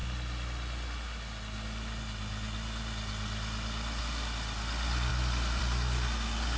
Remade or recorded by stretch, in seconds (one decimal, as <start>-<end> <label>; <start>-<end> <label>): 0.0-6.6 recorded